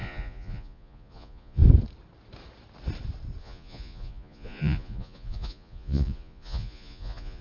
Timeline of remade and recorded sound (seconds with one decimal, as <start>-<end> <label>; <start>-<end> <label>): 0.0-1.6 remade; 1.6-3.4 recorded; 3.4-7.4 remade